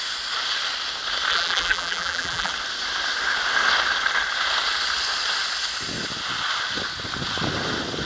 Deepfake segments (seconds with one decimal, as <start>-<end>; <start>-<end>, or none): 1.3-2.5